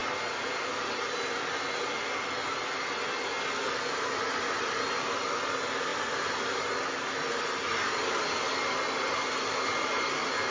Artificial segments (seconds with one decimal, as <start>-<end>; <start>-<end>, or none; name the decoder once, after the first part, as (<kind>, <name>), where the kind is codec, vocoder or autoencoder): none